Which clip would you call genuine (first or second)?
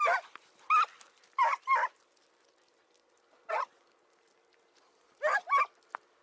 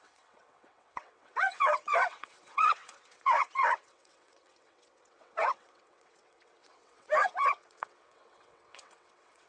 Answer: first